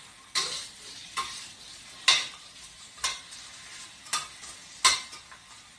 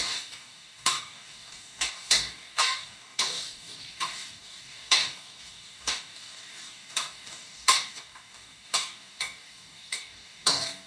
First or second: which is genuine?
first